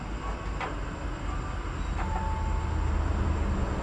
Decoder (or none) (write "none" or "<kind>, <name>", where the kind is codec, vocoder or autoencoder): none